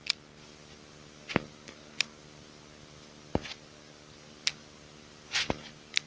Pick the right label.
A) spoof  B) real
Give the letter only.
B